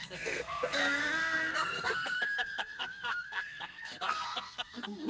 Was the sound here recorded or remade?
remade